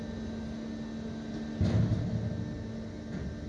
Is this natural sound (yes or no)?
yes